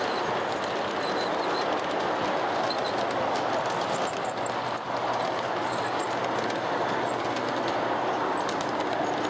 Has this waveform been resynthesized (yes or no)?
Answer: no